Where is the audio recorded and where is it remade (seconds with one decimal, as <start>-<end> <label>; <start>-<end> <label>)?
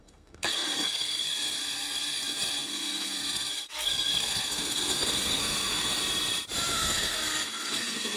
0.0-6.0 remade; 6.0-6.7 recorded; 6.7-8.2 remade